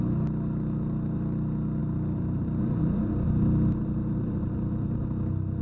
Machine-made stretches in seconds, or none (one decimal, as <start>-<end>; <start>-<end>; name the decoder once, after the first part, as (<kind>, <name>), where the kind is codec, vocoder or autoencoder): 1.8-5.6 (vocoder, BigVGAN v2)